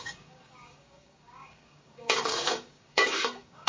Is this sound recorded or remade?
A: remade